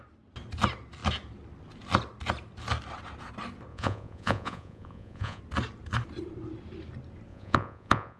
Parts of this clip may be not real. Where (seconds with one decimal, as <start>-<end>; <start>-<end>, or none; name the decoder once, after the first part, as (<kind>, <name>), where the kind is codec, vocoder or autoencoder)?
3.7-5.4 (vocoder, Vocos); 7.3-8.2